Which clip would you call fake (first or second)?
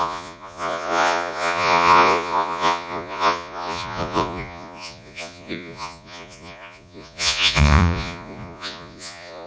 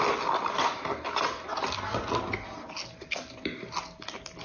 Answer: first